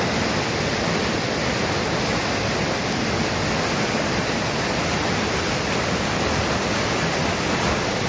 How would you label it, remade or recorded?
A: recorded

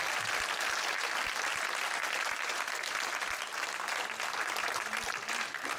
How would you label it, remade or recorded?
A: recorded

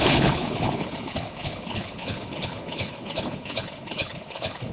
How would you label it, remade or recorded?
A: remade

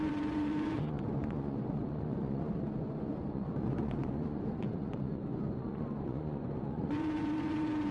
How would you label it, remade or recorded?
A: remade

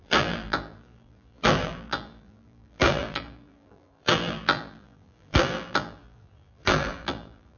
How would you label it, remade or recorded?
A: remade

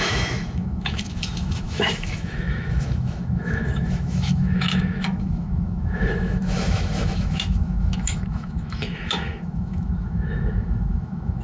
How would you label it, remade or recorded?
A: remade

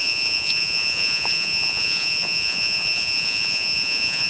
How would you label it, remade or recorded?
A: remade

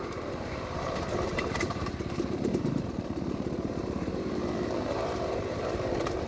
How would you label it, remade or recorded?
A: remade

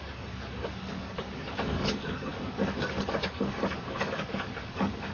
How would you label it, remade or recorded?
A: remade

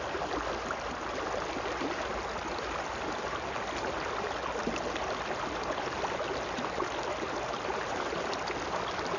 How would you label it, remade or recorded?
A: recorded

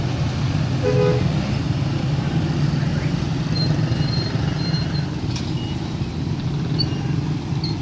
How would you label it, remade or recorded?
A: recorded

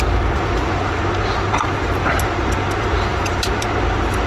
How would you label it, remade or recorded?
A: recorded